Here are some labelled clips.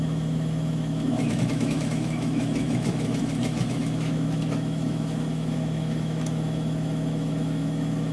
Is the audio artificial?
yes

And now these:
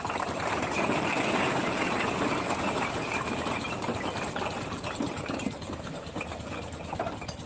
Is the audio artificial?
yes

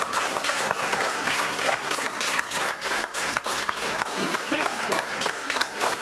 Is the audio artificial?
yes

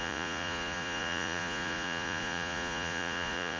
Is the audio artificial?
yes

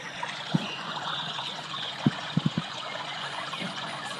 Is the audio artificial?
yes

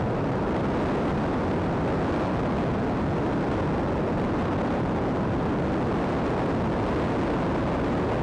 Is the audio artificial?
no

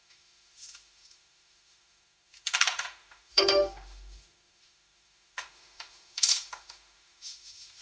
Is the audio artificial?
yes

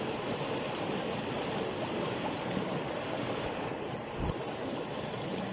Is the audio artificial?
yes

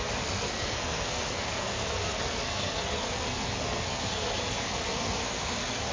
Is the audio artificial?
yes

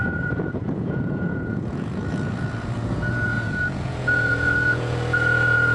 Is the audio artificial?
yes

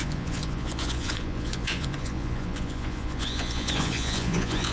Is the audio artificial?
yes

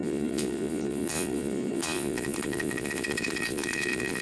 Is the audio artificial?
yes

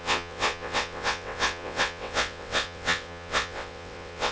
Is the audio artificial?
yes